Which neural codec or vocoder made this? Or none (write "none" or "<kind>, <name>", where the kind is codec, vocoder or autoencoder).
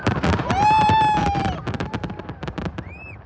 vocoder, BigVGAN v2